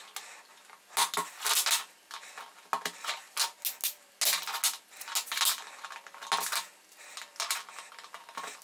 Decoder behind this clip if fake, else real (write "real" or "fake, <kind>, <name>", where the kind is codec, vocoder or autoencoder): real